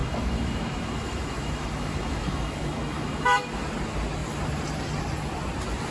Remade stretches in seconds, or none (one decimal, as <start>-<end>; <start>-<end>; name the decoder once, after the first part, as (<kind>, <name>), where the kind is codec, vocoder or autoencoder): 0.0-3.5 (autoencoder, DAC-VAE)